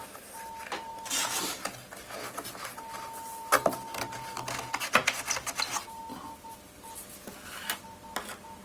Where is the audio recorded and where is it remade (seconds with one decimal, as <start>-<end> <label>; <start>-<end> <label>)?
0.0-8.6 recorded